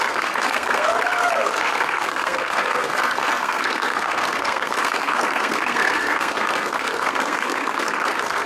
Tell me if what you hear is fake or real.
fake